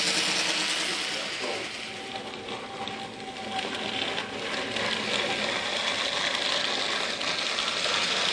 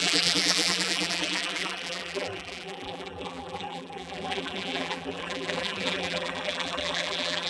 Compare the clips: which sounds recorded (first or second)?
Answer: first